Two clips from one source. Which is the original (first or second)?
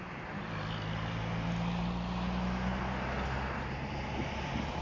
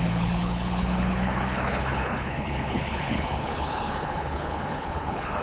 first